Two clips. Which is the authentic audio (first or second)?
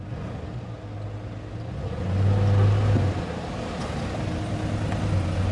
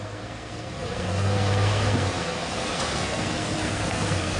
first